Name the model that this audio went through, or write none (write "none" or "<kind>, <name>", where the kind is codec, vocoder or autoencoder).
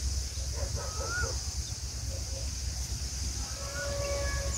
none